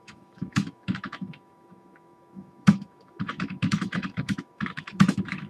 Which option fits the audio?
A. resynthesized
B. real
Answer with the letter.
A